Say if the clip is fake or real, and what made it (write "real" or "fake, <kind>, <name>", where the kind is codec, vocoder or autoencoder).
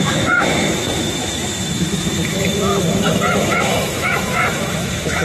fake, autoencoder, DAC-VAE